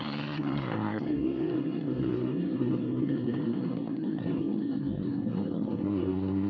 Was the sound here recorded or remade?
remade